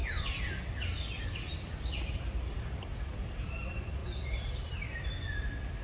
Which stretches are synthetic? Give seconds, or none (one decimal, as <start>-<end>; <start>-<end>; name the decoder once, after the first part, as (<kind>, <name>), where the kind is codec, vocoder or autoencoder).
0.0-3.5 (vocoder, BigVGAN v2); 4.0-4.7